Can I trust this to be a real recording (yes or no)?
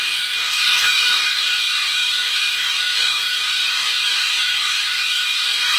no